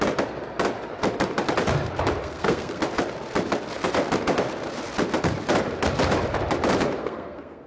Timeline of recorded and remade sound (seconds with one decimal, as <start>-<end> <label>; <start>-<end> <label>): 0.0-2.2 recorded; 2.2-2.8 remade; 2.8-7.0 recorded; 7.0-7.7 remade